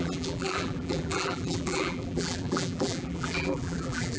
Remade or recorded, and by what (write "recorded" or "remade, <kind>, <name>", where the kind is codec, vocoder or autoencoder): remade, vocoder, BigVGAN v2